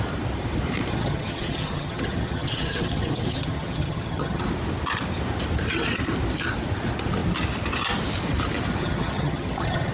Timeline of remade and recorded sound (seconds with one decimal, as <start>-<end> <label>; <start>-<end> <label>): 0.0-0.9 recorded; 0.9-4.4 remade; 4.4-8.8 recorded; 8.8-9.9 remade